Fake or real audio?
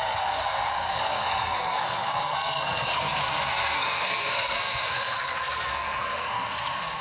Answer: fake